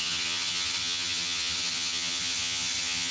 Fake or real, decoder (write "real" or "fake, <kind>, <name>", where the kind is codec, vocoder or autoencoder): fake, vocoder, HiFi-GAN